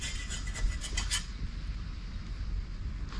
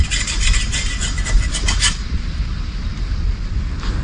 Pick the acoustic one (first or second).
first